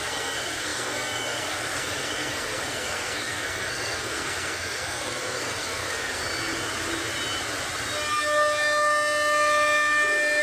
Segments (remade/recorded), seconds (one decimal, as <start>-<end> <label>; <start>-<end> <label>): 0.0-6.2 remade; 6.2-10.4 recorded